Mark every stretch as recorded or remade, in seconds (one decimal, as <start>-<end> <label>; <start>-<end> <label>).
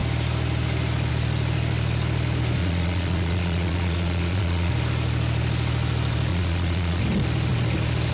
0.0-2.6 recorded; 2.6-4.7 remade; 4.7-6.3 recorded; 6.3-7.0 remade; 7.0-8.1 recorded